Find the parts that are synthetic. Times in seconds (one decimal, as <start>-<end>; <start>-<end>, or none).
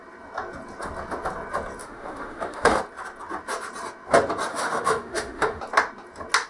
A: 1.8-2.8; 4.5-5.6